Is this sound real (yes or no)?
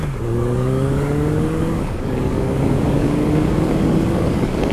no